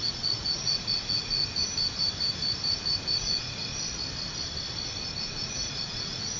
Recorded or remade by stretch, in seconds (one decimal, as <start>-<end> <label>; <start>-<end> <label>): 0.0-1.4 remade; 1.4-3.2 recorded; 3.2-3.7 remade; 3.7-5.2 recorded; 5.2-6.4 remade